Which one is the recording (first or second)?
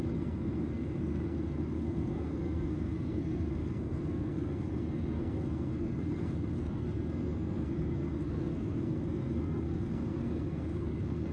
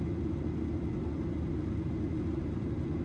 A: second